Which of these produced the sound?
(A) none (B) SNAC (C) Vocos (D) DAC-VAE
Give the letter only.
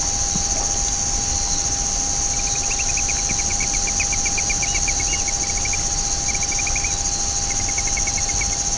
A